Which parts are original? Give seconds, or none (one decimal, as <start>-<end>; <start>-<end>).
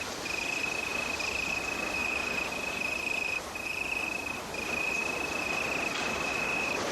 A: 0.0-2.0; 2.7-6.9